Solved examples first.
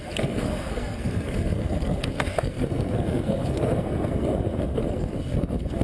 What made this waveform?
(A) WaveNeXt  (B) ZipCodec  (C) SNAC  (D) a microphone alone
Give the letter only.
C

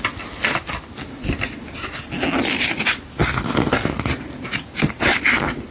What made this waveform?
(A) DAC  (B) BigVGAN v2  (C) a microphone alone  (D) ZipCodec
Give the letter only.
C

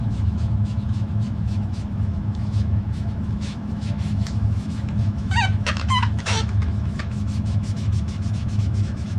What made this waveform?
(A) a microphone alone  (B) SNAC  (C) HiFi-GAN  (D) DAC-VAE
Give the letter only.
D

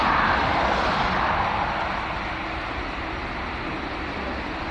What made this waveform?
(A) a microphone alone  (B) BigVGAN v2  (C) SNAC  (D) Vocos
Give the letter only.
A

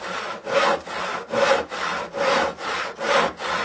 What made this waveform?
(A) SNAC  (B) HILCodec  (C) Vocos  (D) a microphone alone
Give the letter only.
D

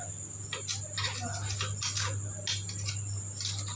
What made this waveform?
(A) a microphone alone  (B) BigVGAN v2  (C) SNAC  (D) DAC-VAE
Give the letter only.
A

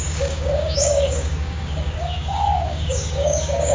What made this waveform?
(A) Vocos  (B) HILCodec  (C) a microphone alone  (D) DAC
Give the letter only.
D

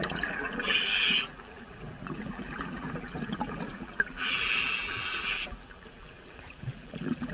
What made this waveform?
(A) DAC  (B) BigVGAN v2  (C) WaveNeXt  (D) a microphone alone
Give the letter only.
B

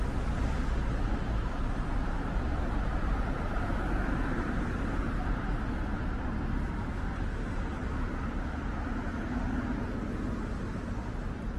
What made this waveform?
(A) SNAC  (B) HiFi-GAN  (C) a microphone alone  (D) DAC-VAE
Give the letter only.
C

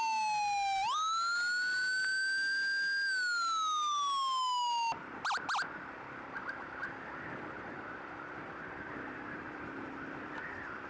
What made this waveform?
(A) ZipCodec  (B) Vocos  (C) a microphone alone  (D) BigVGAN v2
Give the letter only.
C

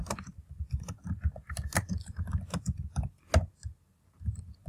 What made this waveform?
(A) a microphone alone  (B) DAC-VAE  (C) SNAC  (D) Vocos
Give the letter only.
A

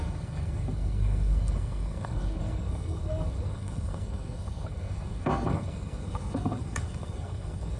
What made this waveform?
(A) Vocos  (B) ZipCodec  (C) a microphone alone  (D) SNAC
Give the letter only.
D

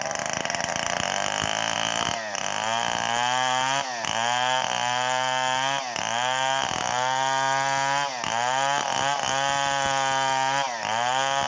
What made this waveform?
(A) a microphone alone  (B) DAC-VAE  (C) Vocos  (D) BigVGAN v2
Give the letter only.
A